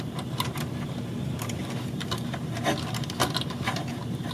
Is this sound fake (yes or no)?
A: no